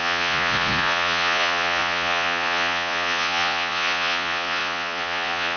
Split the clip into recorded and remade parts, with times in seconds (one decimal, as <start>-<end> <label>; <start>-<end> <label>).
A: 0.0-5.6 remade

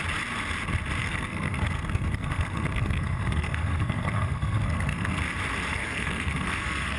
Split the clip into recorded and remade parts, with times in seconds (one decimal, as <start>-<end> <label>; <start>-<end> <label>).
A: 0.0-1.0 recorded; 1.0-5.2 remade; 5.2-5.7 recorded; 5.7-7.0 remade

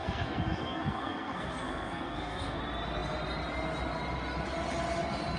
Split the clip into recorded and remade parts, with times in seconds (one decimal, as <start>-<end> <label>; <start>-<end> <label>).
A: 0.0-2.6 remade; 2.6-5.4 recorded

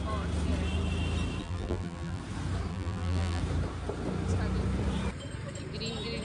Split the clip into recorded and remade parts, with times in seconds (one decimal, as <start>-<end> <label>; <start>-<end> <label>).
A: 0.0-1.4 recorded; 1.4-2.2 remade; 2.2-2.7 recorded; 2.7-3.4 remade; 3.4-6.2 recorded

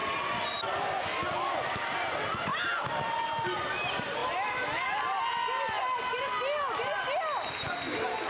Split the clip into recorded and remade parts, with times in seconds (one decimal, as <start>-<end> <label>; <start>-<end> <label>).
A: 0.0-2.5 recorded; 2.5-3.2 remade; 3.2-8.3 recorded